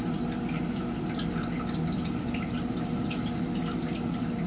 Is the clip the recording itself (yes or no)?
yes